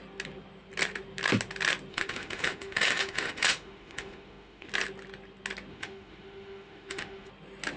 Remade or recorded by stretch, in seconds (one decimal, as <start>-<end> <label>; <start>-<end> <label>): 0.0-1.9 recorded; 1.9-4.7 remade; 4.7-5.7 recorded; 5.7-7.3 remade; 7.3-7.8 recorded